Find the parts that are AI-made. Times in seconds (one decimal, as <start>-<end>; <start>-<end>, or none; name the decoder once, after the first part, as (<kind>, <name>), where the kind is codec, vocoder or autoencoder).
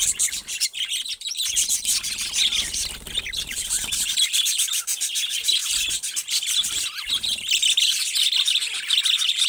0.0-9.5 (vocoder, BigVGAN v2)